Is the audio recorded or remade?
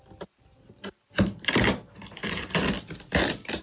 remade